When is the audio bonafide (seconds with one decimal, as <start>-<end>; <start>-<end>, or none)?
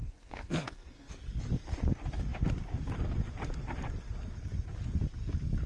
1.1-5.7